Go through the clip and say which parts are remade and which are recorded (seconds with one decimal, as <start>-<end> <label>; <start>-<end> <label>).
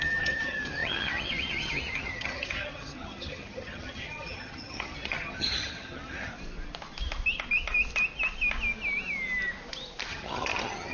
0.0-6.3 remade; 6.3-10.1 recorded; 10.1-10.9 remade